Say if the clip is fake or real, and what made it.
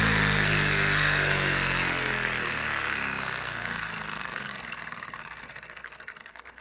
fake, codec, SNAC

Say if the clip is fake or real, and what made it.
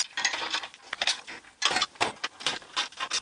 real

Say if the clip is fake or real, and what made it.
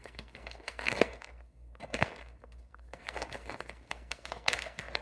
fake, codec, SNAC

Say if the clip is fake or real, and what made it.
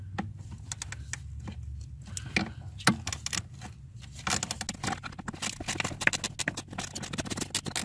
real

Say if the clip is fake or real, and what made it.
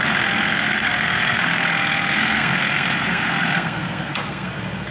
fake, codec, SNAC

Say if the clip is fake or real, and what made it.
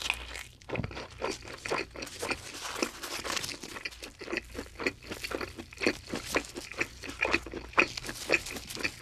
real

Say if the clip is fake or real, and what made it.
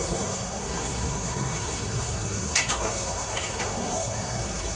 fake, codec, SNAC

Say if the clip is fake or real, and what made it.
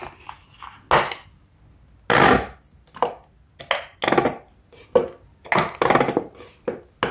real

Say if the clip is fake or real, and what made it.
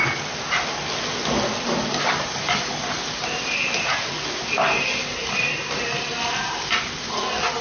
real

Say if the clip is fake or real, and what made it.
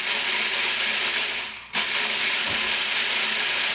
real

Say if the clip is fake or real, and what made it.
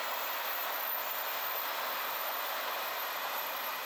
real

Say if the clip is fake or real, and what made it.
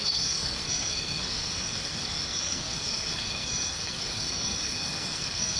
fake, codec, SNAC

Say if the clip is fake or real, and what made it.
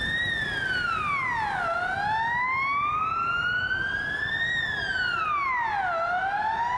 real